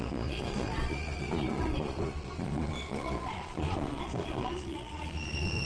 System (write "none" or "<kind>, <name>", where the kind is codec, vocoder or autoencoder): vocoder, Vocos